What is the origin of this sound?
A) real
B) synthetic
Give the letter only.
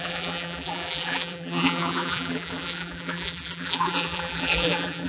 B